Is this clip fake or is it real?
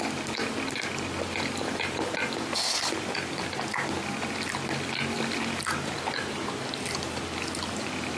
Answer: real